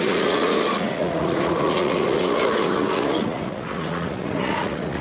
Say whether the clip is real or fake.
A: fake